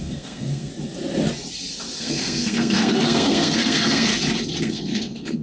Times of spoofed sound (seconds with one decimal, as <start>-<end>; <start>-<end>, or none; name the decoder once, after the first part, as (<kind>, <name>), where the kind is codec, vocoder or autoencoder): 0.0-0.7 (codec, SNAC); 2.0-4.1; 4.6-5.4